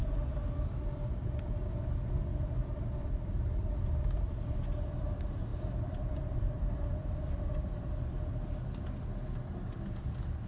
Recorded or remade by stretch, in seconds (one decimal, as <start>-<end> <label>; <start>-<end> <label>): 0.0-2.3 recorded; 2.3-4.6 remade; 4.6-5.5 recorded; 5.5-8.3 remade; 8.3-10.5 recorded